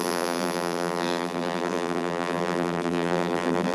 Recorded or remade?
remade